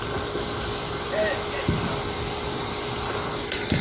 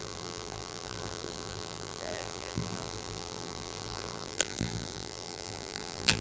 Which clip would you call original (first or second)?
first